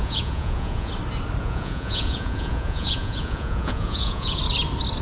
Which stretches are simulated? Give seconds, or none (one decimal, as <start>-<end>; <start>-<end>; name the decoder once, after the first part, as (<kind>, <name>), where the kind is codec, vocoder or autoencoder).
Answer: 0.0-0.9 (vocoder, Vocos); 1.4-4.4

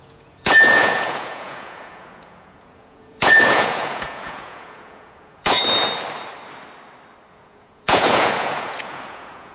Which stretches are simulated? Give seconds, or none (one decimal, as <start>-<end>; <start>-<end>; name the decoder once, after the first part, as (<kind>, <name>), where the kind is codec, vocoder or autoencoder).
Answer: 0.0-5.6 (vocoder, Vocos); 7.3-9.5

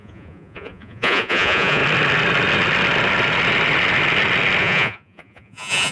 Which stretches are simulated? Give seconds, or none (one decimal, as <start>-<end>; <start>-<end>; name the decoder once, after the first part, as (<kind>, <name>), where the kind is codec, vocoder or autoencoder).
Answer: 0.0-1.8 (vocoder, Vocos); 4.6-5.9

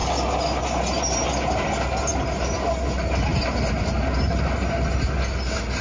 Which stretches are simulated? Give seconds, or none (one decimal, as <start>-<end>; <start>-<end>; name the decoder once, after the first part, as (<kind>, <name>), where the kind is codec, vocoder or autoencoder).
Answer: none